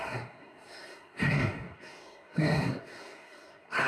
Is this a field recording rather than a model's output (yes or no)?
no